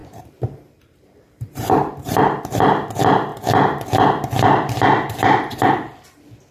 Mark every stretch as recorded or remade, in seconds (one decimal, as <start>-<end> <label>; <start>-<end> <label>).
0.0-2.2 remade; 2.2-6.5 recorded